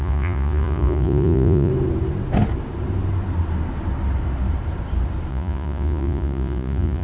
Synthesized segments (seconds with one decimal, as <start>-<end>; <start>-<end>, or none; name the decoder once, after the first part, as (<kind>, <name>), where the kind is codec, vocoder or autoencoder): 0.0-1.7 (vocoder, Vocos); 5.3-7.0

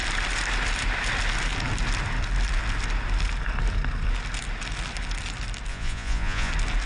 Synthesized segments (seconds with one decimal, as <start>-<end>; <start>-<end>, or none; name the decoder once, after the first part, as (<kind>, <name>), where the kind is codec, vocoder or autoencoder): 5.7-6.5 (vocoder, Vocos)

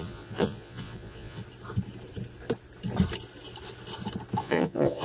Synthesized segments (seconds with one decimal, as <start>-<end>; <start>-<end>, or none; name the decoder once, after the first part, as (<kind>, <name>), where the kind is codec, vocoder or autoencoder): 0.0-1.4 (vocoder, Vocos); 4.4-5.0